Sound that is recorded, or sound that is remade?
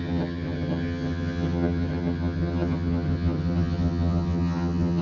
remade